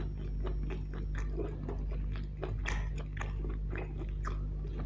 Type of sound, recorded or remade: recorded